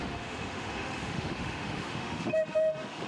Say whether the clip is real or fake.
fake